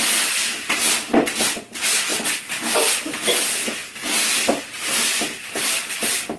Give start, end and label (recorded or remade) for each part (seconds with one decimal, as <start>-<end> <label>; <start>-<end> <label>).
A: 0.0-6.4 recorded